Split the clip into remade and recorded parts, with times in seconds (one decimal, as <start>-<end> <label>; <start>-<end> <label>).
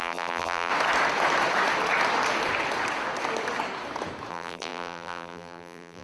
0.0-0.7 remade; 0.7-4.3 recorded; 4.3-6.0 remade